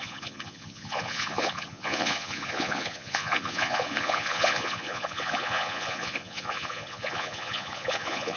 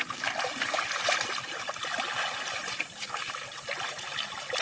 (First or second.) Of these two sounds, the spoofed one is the first